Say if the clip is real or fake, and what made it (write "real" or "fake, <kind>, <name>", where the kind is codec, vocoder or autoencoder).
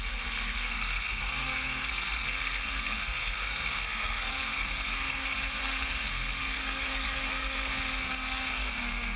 fake, codec, SNAC